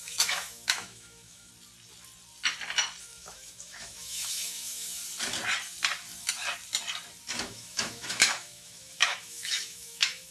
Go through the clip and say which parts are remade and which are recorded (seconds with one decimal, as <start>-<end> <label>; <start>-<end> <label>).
0.0-1.5 remade; 1.5-3.0 recorded; 3.0-5.0 remade; 5.0-7.4 recorded; 7.4-10.3 remade